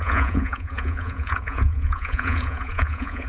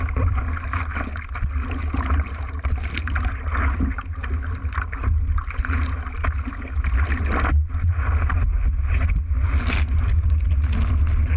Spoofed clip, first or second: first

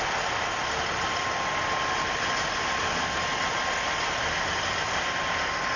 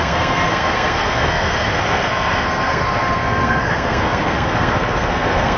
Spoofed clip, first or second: second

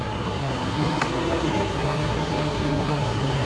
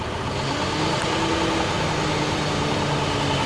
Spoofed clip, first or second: first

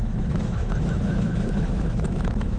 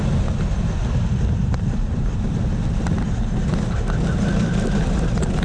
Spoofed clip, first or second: first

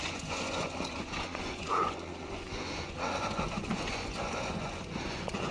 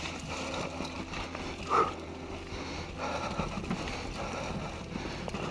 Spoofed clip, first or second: first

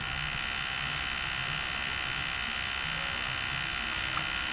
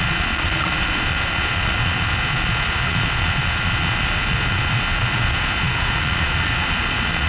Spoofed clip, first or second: second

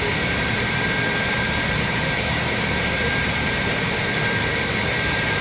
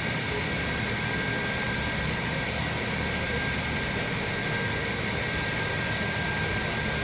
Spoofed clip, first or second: first